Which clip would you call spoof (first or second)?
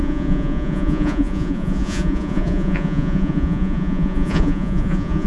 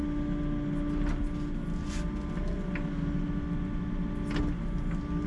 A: first